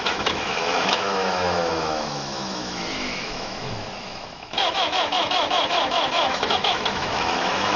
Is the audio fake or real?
fake